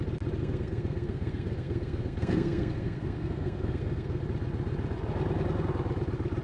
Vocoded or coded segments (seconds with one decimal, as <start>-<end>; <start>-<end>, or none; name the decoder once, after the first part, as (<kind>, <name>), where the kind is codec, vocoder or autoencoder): 0.4-4.2 (codec, SNAC)